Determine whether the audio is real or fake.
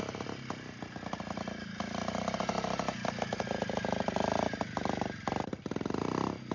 real